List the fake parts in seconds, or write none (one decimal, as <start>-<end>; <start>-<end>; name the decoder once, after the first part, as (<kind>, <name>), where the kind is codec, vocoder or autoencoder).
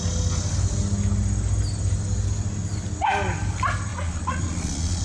3.9-5.0 (vocoder, Vocos)